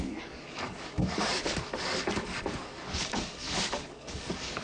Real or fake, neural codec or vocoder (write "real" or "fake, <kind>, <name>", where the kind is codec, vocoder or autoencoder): fake, codec, DAC